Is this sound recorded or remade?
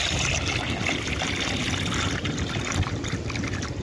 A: recorded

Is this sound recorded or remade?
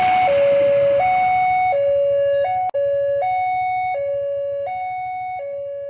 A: recorded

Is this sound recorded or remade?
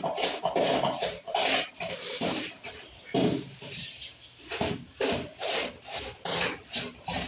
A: remade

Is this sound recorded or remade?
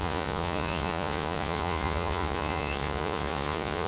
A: remade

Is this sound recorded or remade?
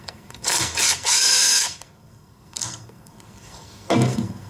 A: remade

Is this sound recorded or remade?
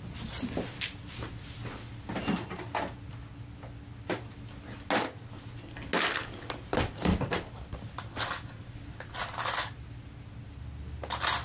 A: recorded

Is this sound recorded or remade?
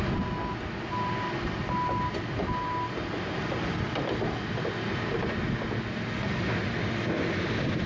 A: recorded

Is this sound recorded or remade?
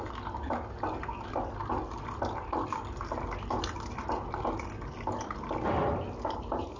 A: recorded